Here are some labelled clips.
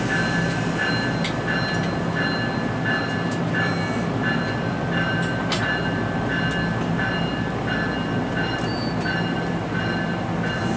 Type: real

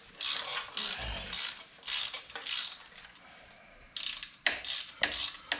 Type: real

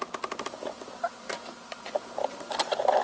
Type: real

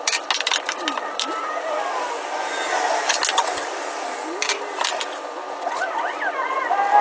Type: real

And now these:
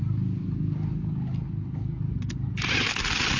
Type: real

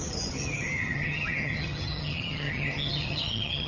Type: fake